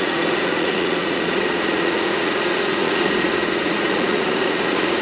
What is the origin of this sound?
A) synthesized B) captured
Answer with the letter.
A